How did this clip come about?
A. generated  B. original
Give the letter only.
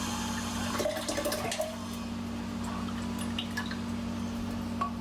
B